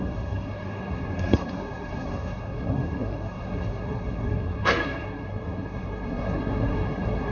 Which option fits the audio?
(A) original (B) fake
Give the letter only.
B